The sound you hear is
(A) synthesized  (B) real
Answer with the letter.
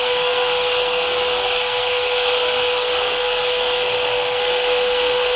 A